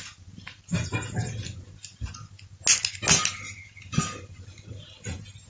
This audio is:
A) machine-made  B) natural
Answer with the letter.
B